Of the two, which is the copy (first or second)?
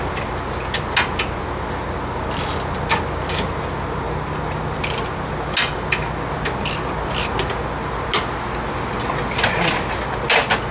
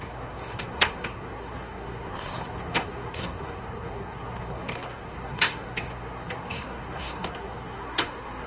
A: second